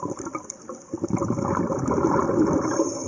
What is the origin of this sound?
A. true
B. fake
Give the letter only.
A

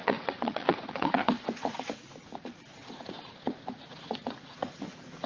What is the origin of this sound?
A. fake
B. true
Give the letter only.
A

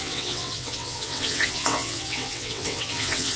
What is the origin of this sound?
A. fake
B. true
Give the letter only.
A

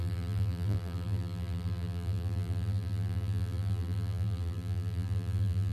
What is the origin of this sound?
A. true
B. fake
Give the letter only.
B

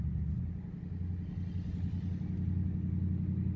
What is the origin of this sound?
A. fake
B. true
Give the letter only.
B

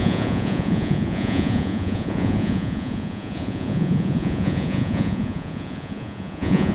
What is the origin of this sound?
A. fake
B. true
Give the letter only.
A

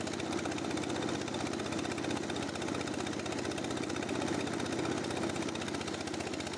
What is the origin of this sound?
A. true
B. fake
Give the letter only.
A